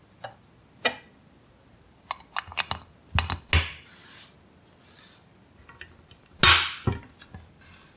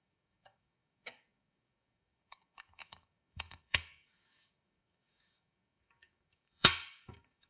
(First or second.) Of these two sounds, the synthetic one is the second